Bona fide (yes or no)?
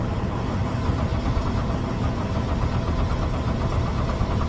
yes